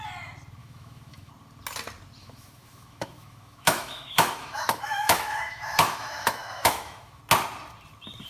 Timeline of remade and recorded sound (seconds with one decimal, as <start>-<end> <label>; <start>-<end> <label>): 0.0-0.6 recorded; 0.6-1.3 remade; 1.3-2.2 recorded; 2.2-7.2 remade; 7.2-8.3 recorded